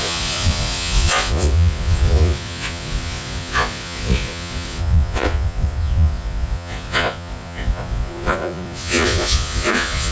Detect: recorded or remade remade